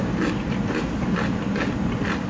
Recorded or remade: recorded